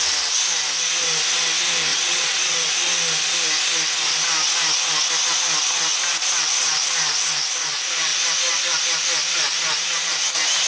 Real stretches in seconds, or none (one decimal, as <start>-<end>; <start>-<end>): 0.0-1.9; 2.7-10.7